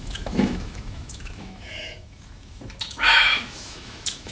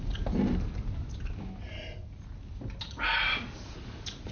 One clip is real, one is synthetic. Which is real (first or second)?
second